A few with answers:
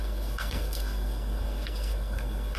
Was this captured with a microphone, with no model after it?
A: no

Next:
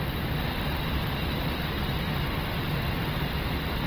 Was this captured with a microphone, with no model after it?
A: yes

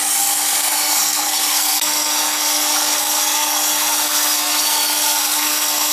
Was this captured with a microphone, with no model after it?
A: no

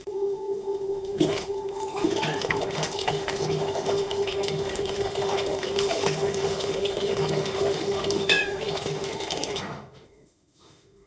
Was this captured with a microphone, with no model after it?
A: no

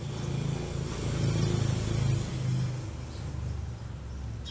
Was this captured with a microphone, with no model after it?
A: yes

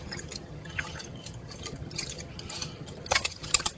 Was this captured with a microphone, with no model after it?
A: no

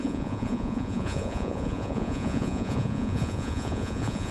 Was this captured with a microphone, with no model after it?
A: no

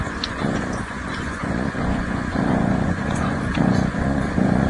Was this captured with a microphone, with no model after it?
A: no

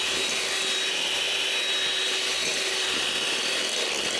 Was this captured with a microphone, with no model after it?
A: yes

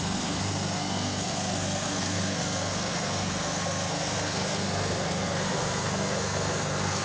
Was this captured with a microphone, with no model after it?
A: no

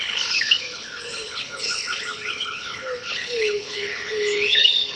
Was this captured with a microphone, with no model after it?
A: no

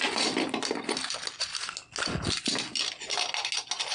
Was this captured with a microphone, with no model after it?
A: yes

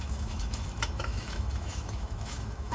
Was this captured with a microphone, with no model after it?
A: no